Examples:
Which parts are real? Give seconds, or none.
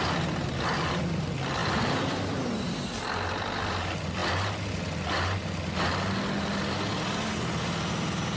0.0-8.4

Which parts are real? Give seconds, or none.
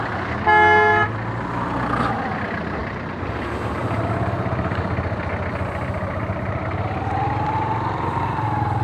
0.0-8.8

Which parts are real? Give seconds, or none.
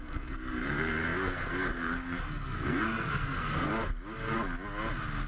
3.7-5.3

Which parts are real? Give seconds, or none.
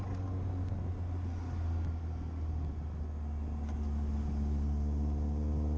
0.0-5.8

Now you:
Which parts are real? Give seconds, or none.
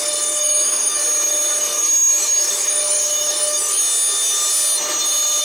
1.0-1.6; 3.8-5.4